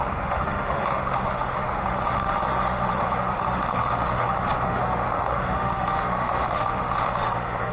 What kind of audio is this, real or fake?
fake